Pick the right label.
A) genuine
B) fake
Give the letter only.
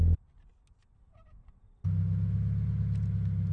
A